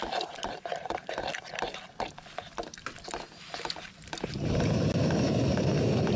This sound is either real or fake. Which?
real